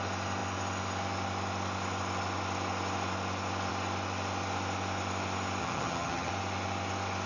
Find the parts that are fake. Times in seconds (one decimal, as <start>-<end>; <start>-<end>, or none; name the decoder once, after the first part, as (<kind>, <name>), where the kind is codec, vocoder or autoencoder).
5.6-6.3 (vocoder, HiFi-GAN)